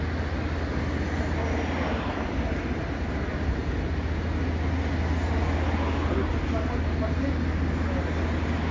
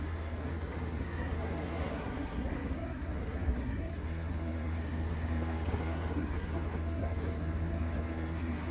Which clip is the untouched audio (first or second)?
first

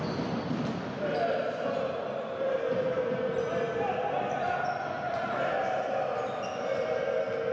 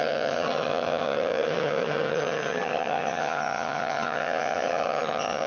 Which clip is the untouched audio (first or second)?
first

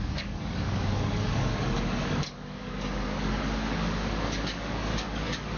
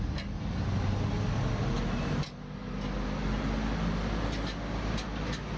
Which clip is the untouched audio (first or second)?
second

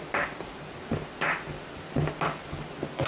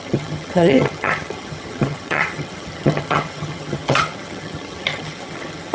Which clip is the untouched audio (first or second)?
first